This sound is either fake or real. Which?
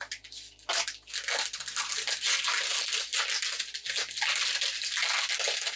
real